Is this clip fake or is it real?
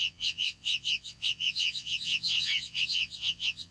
fake